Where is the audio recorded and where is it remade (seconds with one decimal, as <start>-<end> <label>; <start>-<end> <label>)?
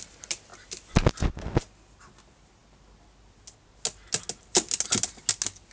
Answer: 0.0-5.7 recorded